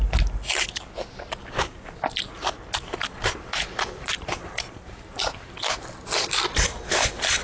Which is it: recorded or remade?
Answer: recorded